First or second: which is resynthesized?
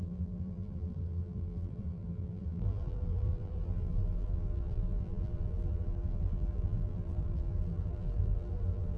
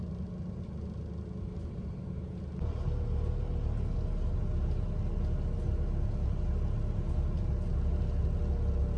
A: first